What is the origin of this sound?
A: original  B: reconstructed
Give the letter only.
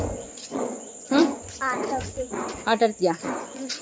B